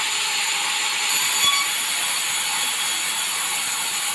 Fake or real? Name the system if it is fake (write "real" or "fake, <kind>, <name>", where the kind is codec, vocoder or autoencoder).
real